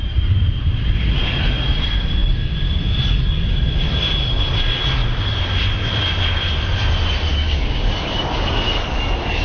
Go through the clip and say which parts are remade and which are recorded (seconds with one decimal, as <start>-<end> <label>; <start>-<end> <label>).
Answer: 0.0-7.3 recorded; 7.3-9.4 remade